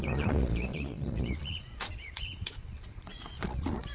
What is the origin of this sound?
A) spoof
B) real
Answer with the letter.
A